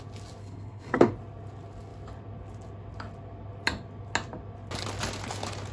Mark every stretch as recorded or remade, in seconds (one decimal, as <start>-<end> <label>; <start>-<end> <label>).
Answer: 0.0-0.4 recorded; 0.4-1.1 remade; 1.1-5.7 recorded